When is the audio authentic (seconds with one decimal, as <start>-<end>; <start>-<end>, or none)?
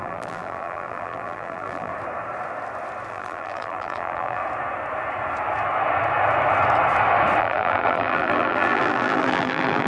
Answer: 1.9-3.1; 4.4-7.4